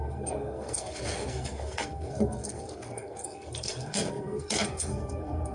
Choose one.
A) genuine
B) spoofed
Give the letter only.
B